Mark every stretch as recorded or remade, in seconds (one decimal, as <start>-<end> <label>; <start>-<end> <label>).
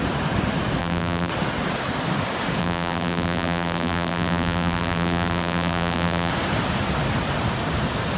0.0-0.8 recorded; 0.8-1.3 remade; 1.3-2.6 recorded; 2.6-6.3 remade; 6.3-8.2 recorded